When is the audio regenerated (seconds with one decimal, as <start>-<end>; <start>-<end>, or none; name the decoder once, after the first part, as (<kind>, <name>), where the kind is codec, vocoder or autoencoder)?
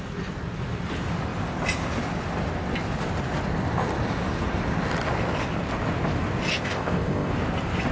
6.5-7.3 (codec, ZipCodec)